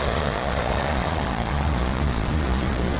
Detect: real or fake fake